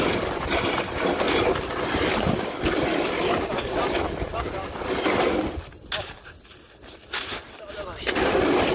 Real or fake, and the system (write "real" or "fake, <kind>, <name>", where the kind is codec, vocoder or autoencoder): real